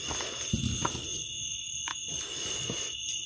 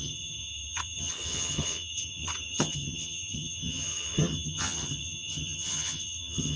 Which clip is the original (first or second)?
first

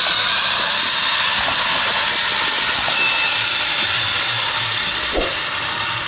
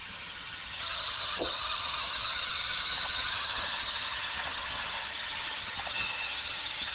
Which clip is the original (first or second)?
first